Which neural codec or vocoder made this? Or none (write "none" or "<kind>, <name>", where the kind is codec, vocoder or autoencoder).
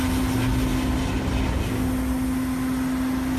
none